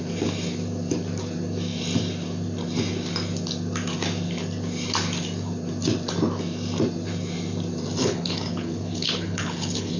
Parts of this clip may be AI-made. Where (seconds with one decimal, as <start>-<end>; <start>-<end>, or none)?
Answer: 8.0-10.0